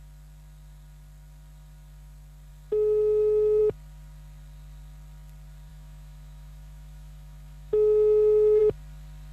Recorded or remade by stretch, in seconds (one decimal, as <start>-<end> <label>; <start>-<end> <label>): 0.0-5.7 recorded; 5.7-8.6 remade; 8.6-9.3 recorded